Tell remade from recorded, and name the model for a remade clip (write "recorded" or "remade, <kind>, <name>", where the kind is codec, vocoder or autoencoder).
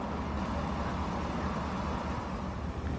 recorded